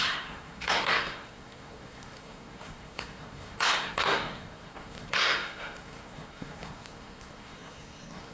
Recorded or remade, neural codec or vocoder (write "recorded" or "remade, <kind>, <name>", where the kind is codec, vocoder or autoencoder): remade, codec, SNAC